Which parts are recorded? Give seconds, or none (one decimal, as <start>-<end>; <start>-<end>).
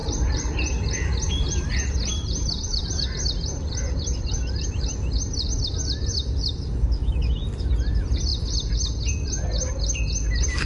4.7-7.0; 7.7-10.6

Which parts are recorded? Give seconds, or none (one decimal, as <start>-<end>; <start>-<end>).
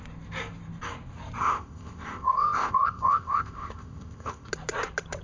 0.0-1.4; 4.5-5.2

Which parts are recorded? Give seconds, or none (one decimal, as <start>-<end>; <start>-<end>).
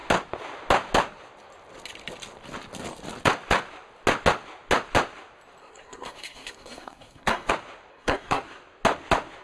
0.0-5.6; 7.5-7.9; 8.4-9.4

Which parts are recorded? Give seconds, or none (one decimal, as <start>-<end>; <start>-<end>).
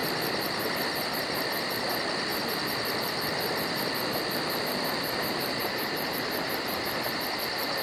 0.0-2.3; 6.1-7.8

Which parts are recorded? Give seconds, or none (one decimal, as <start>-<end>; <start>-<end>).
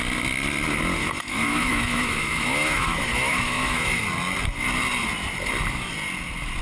0.0-1.0; 4.0-6.6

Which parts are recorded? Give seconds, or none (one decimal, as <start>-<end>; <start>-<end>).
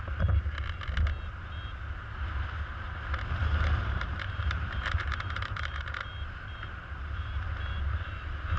0.0-3.4; 6.0-6.8; 7.5-8.6